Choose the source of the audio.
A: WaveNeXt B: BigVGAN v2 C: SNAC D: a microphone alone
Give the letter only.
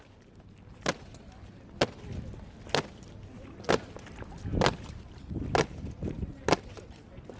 D